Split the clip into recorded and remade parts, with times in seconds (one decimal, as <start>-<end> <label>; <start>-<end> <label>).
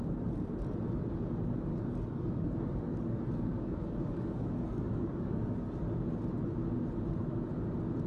0.0-1.7 recorded; 1.7-5.8 remade; 5.8-8.1 recorded